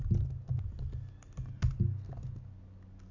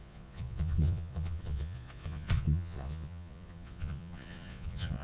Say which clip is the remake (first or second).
second